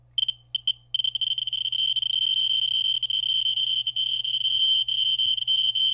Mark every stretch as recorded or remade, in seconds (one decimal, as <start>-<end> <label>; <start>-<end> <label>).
0.0-3.5 recorded; 3.5-5.9 remade